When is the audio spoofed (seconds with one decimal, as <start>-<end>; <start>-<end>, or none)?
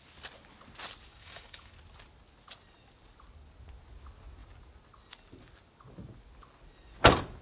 1.1-1.7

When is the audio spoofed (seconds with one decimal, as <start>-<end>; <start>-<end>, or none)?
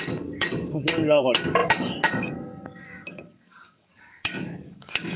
0.0-5.2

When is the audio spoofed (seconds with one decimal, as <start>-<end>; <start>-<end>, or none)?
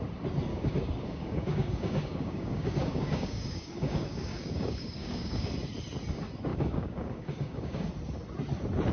0.5-5.5; 6.5-7.9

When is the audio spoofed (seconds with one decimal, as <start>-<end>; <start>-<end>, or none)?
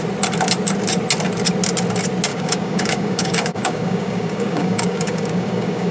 2.3-5.9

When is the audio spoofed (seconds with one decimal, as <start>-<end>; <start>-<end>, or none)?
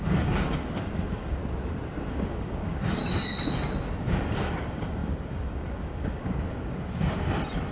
0.0-1.4; 2.1-3.0; 3.9-7.7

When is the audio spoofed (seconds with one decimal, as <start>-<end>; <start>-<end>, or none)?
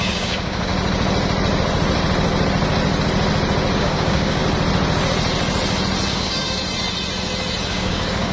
0.0-0.7; 3.8-4.4; 6.1-6.6; 7.7-8.3